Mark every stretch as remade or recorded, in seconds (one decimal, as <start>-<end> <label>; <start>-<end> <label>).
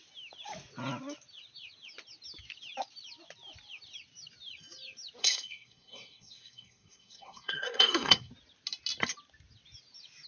0.0-5.2 recorded; 5.2-8.3 remade; 8.3-10.3 recorded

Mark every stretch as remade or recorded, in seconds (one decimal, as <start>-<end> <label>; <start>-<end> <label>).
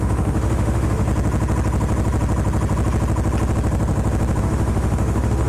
0.0-1.1 remade; 1.1-4.4 recorded; 4.4-5.5 remade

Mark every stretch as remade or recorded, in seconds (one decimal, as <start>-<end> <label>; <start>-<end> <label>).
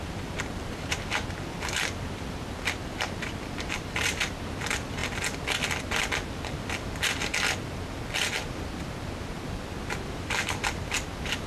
0.0-5.0 remade; 5.0-6.3 recorded; 6.3-7.3 remade; 7.3-9.8 recorded; 9.8-11.5 remade